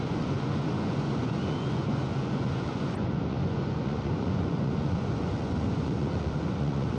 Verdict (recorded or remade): remade